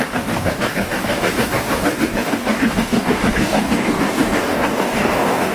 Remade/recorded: remade